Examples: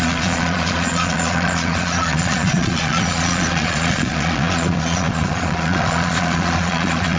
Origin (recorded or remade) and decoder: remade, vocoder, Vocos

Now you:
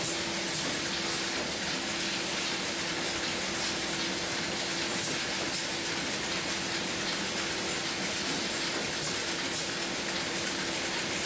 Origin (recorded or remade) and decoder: recorded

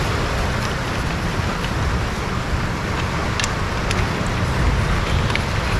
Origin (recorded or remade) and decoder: recorded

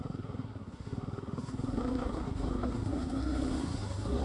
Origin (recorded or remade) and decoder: remade, codec, SNAC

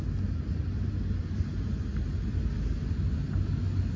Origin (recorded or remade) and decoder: recorded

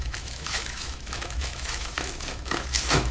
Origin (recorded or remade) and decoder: remade, autoencoder, DAC-VAE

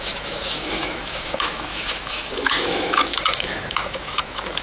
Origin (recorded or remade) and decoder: remade, autoencoder, DAC-VAE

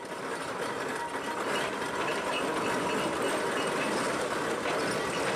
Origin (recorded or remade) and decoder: recorded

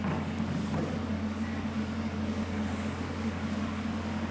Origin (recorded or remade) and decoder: remade, codec, DAC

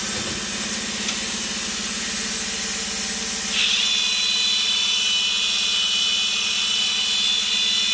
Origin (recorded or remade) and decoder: recorded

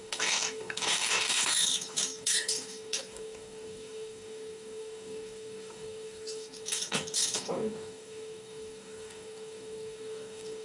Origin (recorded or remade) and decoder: remade, codec, DAC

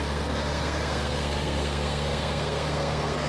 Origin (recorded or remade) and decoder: remade, codec, SNAC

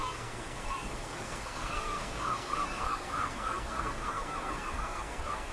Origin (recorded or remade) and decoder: remade, codec, SNAC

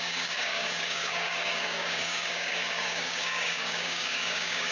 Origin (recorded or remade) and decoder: remade, codec, DAC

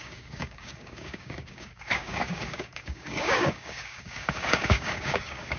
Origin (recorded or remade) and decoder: remade, codec, DAC